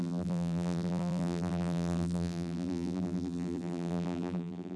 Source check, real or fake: fake